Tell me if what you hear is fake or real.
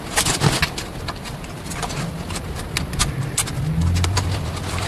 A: real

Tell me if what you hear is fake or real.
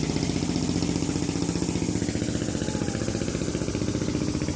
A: real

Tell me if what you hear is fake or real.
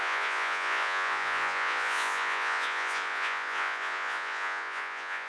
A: fake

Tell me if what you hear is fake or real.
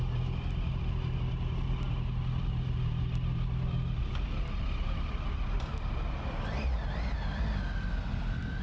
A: real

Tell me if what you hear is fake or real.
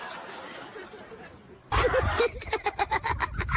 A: real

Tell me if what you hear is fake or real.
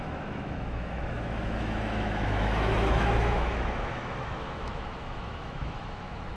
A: fake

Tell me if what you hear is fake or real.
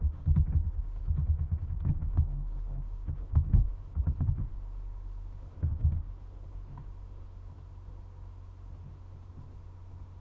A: fake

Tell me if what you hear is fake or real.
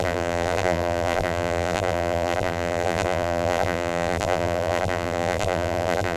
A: fake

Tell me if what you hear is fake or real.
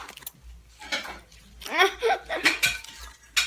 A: real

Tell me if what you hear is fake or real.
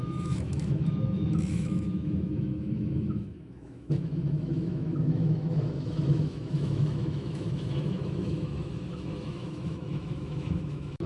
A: fake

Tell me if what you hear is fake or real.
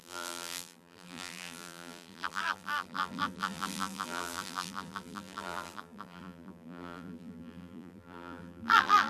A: fake